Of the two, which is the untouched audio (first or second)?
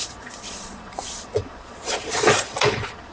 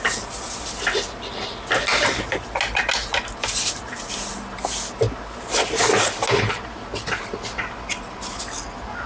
second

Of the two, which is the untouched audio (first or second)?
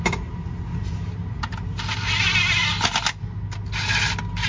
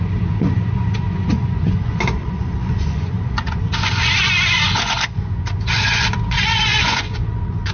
first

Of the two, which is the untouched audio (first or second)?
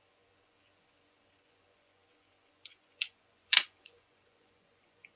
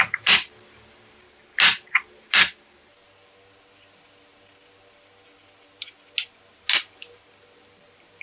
second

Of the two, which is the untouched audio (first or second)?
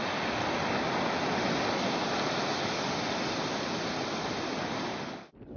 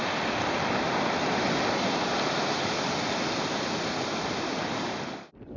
first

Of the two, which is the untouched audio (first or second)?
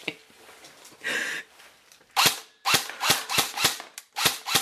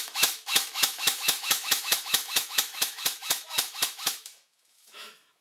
first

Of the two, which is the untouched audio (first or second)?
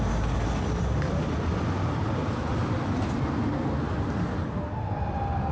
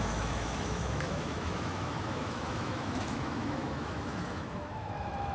first